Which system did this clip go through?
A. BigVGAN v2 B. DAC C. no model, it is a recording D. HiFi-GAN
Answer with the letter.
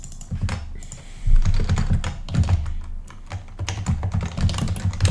C